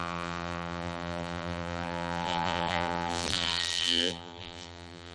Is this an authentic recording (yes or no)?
no